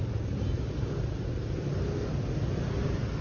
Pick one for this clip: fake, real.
real